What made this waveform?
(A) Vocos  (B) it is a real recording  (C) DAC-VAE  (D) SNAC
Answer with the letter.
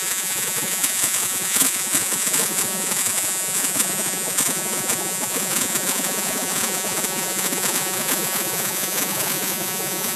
A